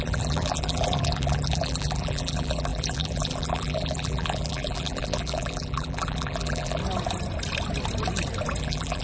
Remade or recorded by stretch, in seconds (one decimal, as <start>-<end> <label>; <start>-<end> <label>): 0.0-6.8 remade; 6.8-8.6 recorded; 8.6-9.0 remade